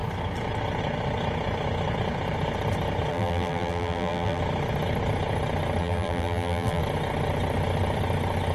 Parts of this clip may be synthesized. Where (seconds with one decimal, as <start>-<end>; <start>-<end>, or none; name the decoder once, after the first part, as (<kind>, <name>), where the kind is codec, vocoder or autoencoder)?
3.1-4.4 (vocoder, BigVGAN v2); 5.8-6.8